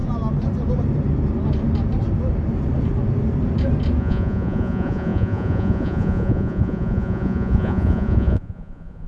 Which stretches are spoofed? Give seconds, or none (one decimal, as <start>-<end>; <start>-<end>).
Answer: 4.0-9.1